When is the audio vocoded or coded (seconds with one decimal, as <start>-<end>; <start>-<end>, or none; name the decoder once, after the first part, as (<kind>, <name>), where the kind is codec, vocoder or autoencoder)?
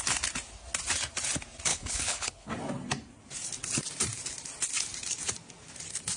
1.7-2.5 (codec, HILCodec)